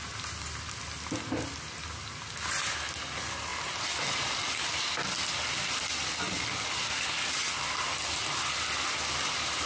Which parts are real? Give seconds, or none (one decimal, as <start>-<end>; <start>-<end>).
0.0-9.7